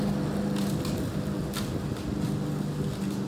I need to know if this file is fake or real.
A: real